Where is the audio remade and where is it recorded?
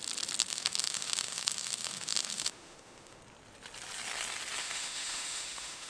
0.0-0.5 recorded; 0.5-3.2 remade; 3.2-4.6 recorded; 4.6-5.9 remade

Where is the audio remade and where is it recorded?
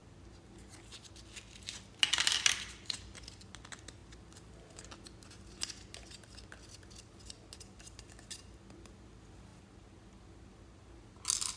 0.0-11.6 recorded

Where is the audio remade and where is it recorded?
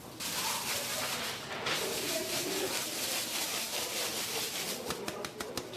0.0-2.2 recorded; 2.2-5.8 remade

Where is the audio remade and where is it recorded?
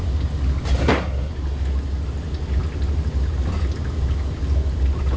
0.0-0.8 recorded; 0.8-1.3 remade; 1.3-5.2 recorded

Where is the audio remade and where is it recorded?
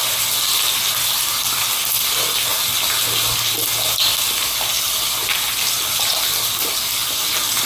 0.0-7.7 recorded